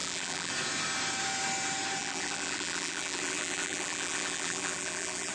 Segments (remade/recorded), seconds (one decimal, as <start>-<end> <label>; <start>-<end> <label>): 0.0-0.5 remade; 0.5-2.0 recorded; 2.0-5.3 remade